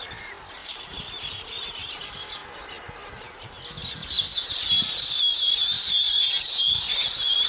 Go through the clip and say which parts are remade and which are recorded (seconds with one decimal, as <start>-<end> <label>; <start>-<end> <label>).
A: 0.0-0.6 recorded; 0.6-2.0 remade; 2.0-7.5 recorded